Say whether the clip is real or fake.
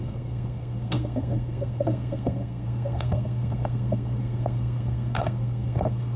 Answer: fake